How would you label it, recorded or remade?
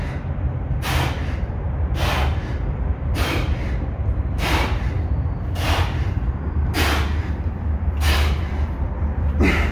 remade